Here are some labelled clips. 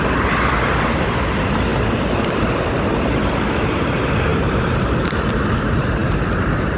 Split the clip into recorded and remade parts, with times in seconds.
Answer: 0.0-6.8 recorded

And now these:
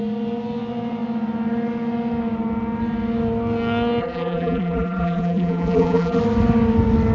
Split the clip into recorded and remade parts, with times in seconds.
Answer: 0.0-4.0 recorded; 4.0-6.2 remade; 6.2-7.1 recorded

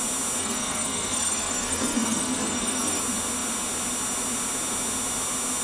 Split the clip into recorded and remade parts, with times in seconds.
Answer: 0.0-0.4 recorded; 0.4-3.0 remade; 3.0-5.6 recorded

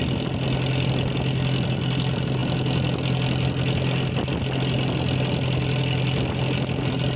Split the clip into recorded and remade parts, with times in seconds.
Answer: 0.0-7.2 recorded